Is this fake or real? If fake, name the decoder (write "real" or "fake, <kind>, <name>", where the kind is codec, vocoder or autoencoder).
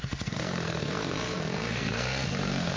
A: fake, codec, SNAC